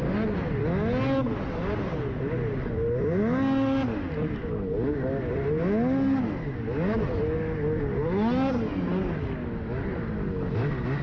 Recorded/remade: recorded